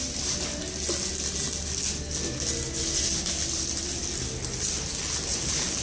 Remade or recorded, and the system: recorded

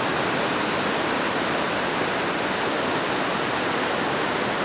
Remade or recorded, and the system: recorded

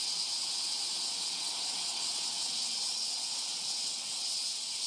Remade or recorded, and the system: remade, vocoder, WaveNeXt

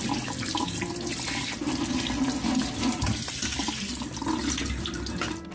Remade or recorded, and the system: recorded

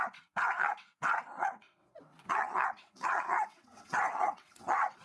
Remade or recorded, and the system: remade, vocoder, WaveNeXt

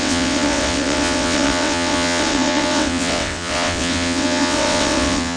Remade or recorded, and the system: remade, vocoder, WaveNeXt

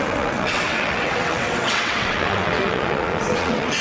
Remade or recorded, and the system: remade, vocoder, WaveNeXt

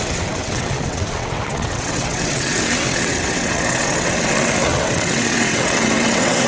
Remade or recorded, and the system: remade, vocoder, WaveNeXt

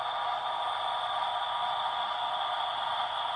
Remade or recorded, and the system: recorded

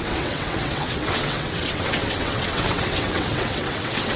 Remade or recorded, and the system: remade, vocoder, WaveNeXt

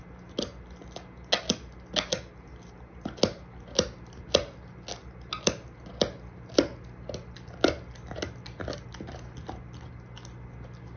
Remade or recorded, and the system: recorded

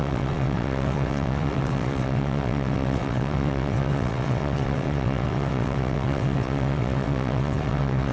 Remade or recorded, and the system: remade, vocoder, WaveNeXt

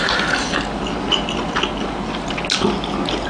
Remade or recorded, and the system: recorded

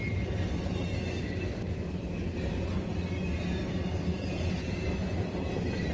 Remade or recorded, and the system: recorded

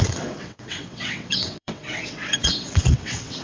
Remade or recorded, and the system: remade, vocoder, WaveNeXt